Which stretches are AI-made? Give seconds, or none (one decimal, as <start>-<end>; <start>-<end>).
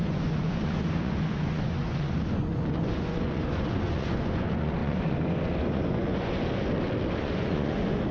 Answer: 0.0-6.4; 7.2-8.1